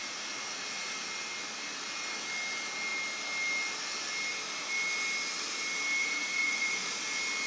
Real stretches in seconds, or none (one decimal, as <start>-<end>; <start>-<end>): 0.9-6.0; 7.0-7.5